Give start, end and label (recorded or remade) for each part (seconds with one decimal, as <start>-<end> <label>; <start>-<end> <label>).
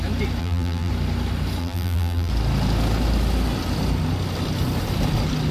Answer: 0.0-0.4 recorded; 0.4-0.9 remade; 0.9-1.6 recorded; 1.6-2.3 remade; 2.3-5.5 recorded